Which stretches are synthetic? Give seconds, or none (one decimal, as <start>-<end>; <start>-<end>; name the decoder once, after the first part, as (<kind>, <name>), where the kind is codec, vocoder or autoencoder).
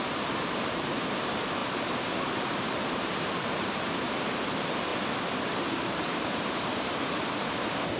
0.0-4.9 (vocoder, BigVGAN v2); 5.4-8.0